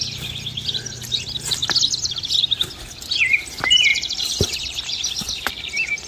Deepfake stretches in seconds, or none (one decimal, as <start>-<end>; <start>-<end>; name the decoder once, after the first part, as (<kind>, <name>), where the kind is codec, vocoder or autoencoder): 3.9-6.1 (vocoder, BigVGAN v2)